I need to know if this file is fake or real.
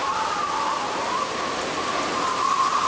real